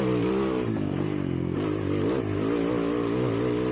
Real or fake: real